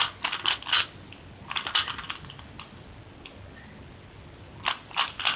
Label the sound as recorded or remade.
recorded